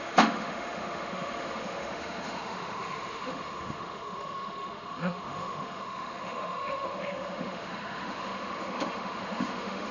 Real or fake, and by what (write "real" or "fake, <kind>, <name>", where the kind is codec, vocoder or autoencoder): fake, autoencoder, DAC-VAE